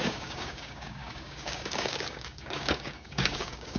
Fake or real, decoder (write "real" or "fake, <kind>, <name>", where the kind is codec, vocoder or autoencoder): fake, codec, DAC